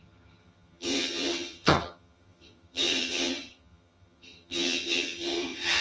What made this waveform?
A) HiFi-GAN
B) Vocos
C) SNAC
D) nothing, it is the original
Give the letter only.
A